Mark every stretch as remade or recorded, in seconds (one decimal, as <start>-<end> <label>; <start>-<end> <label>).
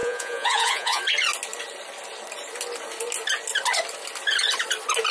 0.0-1.0 remade; 1.0-5.1 recorded